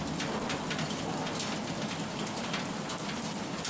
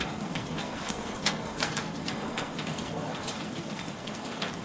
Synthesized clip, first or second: second